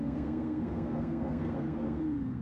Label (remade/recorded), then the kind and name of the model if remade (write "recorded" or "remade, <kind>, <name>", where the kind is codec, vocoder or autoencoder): remade, codec, SNAC